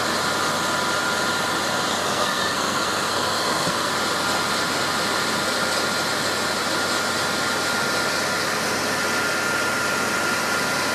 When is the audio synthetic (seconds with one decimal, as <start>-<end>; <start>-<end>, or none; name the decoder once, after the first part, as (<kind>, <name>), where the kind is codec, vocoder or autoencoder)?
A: 1.9-3.9 (codec, SNAC)